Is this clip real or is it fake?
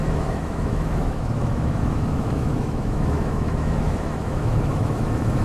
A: fake